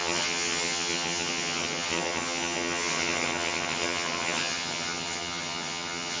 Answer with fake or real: fake